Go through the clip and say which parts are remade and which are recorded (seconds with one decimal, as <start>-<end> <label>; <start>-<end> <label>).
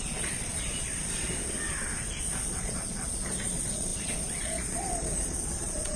0.0-0.9 remade; 0.9-2.0 recorded; 2.0-6.0 remade